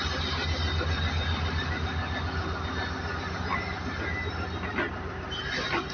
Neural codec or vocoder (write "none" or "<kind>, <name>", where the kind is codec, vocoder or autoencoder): none